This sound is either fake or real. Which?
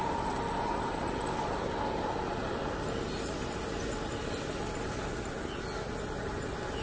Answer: real